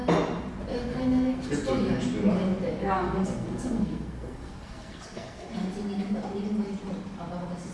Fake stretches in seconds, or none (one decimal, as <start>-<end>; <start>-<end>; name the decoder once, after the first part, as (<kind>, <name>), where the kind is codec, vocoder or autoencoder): 0.9-1.5 (codec, SNAC); 2.8-5.5